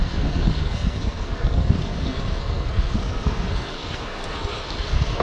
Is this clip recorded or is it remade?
remade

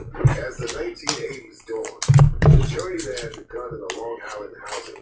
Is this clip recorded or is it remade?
recorded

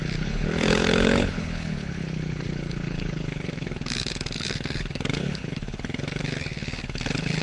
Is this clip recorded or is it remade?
remade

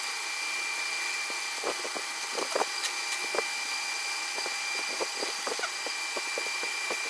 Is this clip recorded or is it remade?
recorded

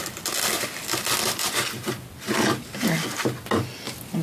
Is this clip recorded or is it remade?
recorded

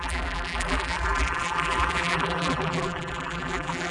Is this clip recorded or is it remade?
remade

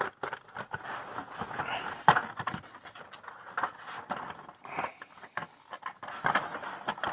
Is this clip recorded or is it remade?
recorded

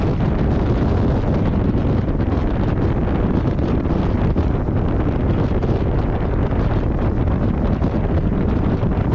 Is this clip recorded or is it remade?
recorded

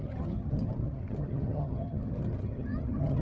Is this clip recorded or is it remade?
remade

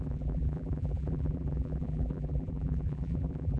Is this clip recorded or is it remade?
remade